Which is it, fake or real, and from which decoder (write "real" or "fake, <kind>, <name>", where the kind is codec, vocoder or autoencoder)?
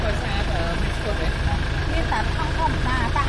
real